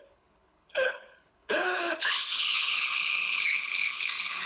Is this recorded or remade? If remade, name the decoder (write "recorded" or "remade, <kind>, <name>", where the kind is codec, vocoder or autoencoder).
remade, codec, HILCodec